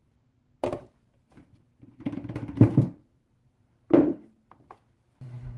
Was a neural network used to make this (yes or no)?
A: yes